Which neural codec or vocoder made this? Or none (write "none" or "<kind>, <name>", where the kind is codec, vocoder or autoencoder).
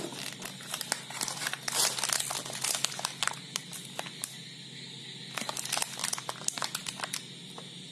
none